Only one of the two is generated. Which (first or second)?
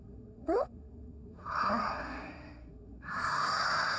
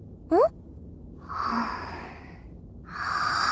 first